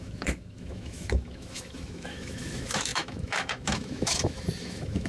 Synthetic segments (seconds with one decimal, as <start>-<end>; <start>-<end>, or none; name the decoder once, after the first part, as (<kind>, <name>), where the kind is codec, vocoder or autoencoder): 0.0-5.1 (autoencoder, DAC-VAE)